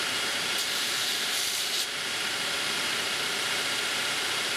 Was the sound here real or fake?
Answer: fake